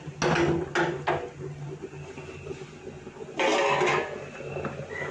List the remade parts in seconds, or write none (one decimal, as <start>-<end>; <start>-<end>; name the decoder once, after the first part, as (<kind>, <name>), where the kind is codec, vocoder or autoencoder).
none